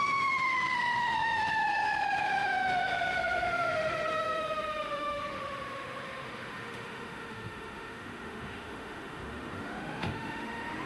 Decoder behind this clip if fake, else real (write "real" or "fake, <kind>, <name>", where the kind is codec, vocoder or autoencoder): fake, autoencoder, DAC-VAE